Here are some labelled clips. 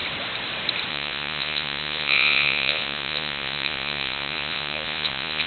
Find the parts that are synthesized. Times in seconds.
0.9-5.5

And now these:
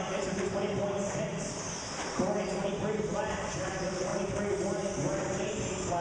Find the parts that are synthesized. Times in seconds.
0.0-1.3; 2.7-4.1

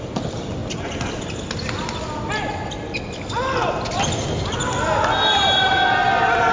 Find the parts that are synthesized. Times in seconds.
none

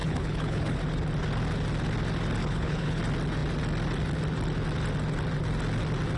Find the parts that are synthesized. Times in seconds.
0.0-0.8; 2.4-3.0

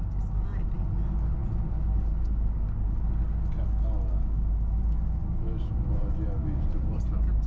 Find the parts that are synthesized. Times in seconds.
none